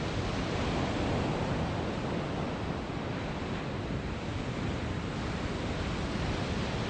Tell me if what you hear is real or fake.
real